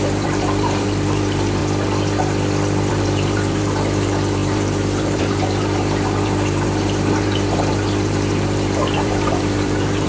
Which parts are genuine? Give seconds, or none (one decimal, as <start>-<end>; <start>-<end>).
1.6-2.9

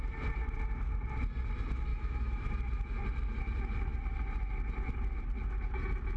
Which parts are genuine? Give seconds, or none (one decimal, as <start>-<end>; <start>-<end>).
0.0-1.9; 2.5-6.2

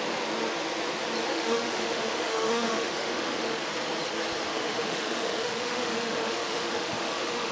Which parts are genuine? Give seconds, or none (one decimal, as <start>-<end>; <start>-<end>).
0.0-1.3; 3.6-4.5

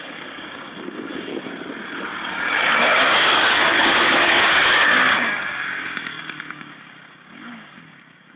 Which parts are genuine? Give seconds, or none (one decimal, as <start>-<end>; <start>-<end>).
1.3-2.3